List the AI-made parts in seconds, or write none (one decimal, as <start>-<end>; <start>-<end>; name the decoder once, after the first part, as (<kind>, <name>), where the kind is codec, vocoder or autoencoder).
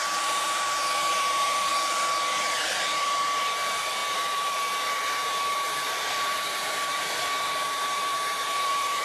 0.0-1.7 (vocoder, BigVGAN v2); 2.5-9.0